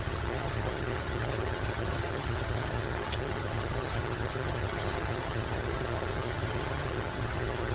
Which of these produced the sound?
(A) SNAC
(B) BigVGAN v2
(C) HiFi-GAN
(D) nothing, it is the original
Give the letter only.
C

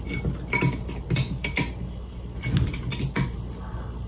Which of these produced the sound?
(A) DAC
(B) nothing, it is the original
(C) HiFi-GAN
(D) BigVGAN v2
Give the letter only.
B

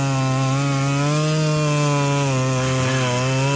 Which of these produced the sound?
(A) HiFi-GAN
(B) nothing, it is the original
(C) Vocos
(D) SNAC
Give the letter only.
B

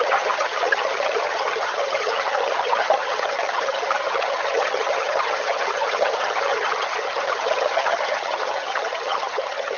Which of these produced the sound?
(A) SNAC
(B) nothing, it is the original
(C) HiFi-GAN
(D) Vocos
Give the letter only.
C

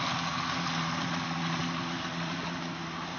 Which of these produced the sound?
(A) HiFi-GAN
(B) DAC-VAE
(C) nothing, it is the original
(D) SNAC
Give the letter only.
C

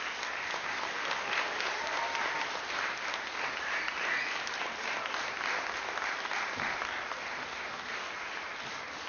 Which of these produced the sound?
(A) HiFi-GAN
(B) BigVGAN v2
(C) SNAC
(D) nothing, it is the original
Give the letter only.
D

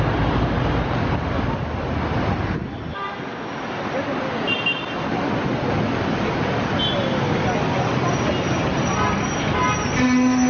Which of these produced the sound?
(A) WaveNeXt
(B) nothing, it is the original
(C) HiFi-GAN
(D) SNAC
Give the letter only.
B